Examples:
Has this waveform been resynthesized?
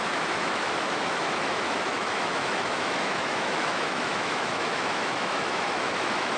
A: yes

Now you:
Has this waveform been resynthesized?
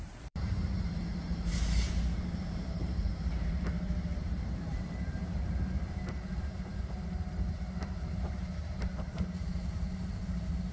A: yes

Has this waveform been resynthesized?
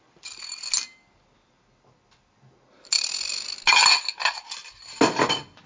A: no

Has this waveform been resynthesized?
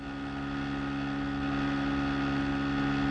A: no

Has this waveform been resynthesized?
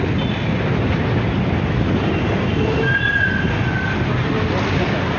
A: no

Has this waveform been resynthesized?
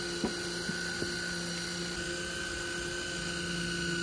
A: no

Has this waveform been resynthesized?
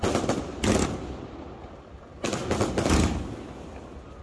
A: no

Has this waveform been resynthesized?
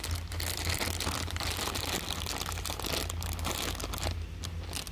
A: no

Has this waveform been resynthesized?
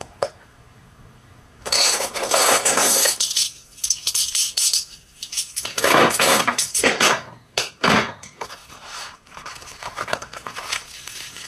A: yes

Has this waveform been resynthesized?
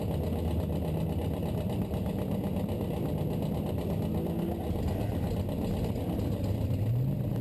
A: no